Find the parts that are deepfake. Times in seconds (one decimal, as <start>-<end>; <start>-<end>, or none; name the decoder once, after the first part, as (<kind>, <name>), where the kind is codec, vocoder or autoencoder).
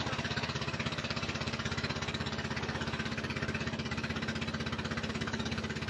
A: 0.0-4.3 (codec, DAC); 5.1-5.9